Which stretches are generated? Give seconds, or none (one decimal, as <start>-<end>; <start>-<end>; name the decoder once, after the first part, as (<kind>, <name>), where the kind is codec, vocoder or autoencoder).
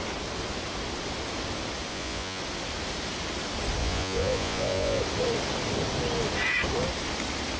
1.9-2.4 (vocoder, Vocos); 3.8-5.0